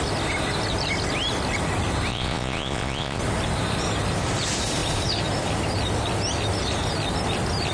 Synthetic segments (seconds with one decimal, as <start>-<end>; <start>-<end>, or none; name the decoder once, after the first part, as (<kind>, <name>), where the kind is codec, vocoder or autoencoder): 2.1-3.2 (vocoder, Vocos)